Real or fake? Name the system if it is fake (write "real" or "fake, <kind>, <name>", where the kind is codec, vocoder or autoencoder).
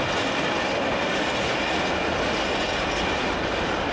real